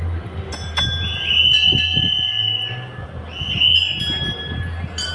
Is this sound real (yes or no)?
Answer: yes